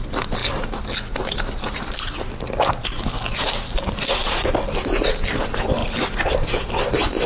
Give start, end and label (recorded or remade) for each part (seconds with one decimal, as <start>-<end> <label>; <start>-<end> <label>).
0.0-7.3 recorded